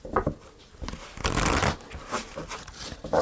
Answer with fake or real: real